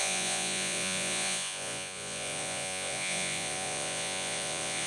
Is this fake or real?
fake